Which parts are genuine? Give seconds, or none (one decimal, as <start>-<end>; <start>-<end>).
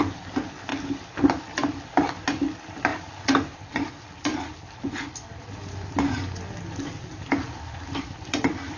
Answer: 0.0-8.8